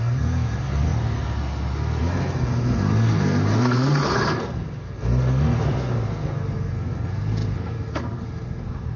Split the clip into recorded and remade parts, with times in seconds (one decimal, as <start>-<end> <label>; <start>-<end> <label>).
0.0-9.0 remade